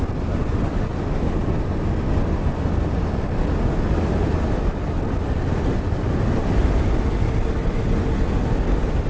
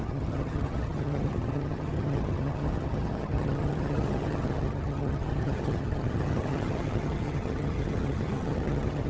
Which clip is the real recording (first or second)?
first